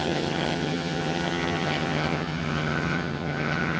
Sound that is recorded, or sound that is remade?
remade